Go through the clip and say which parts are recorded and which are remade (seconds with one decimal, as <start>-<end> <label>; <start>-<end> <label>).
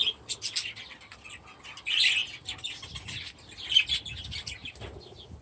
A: 0.0-5.4 recorded